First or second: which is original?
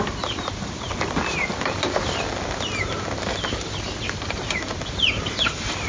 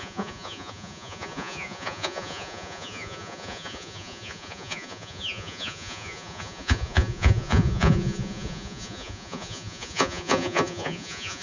first